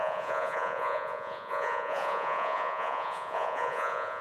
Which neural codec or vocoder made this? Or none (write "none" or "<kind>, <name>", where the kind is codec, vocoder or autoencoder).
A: vocoder, Vocos